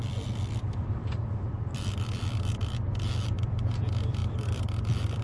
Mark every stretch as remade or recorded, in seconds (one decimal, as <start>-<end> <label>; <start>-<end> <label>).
0.0-5.2 remade